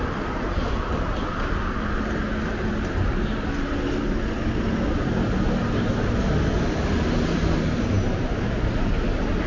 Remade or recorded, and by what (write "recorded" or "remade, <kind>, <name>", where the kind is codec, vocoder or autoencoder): recorded